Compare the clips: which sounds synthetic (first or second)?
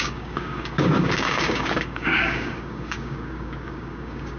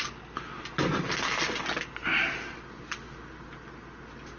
first